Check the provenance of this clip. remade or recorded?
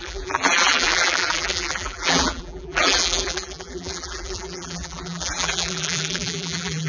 remade